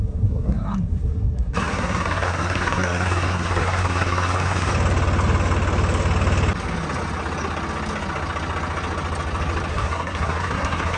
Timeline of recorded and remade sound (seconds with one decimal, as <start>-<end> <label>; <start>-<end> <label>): 0.0-4.7 remade; 4.7-9.7 recorded; 9.7-11.0 remade